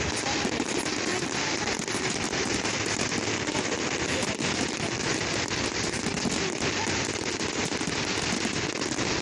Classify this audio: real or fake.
real